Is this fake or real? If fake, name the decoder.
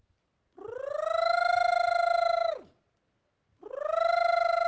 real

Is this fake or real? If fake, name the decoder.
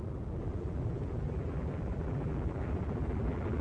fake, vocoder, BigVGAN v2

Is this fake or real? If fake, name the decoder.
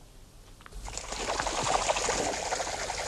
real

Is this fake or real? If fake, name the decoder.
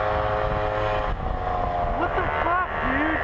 real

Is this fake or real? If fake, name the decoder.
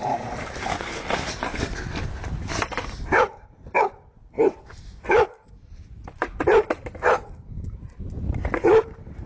fake, vocoder, BigVGAN v2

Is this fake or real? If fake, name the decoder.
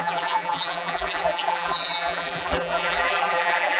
fake, vocoder, BigVGAN v2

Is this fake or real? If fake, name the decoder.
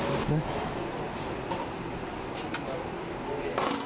real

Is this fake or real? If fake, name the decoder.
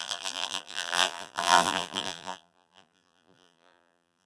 fake, vocoder, BigVGAN v2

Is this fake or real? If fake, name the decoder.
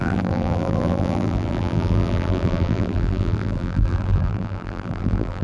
fake, vocoder, BigVGAN v2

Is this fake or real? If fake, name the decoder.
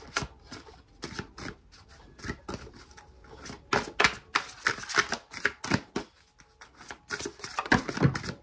real